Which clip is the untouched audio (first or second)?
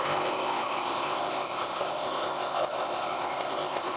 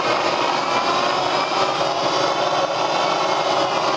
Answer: second